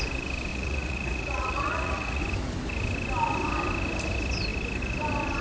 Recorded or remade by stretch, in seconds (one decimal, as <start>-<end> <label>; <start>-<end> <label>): 0.0-0.5 recorded; 0.5-2.2 remade; 2.2-5.4 recorded